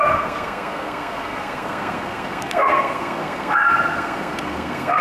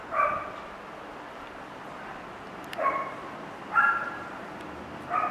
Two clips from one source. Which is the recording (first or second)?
second